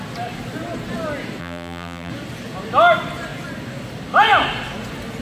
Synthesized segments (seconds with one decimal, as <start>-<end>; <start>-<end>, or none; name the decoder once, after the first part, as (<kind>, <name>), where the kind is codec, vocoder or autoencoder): 1.4-2.1 (vocoder, BigVGAN v2)